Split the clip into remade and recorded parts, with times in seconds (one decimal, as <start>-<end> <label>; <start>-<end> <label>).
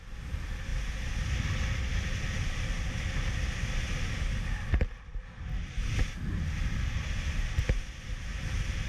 0.0-8.9 recorded